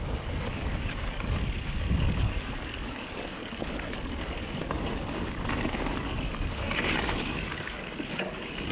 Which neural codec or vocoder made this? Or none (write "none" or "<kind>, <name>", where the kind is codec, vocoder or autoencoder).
codec, DAC